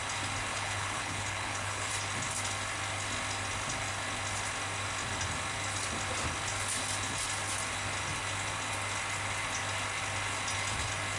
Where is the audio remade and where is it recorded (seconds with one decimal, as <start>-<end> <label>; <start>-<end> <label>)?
0.0-0.5 recorded; 0.5-1.9 remade; 1.9-11.2 recorded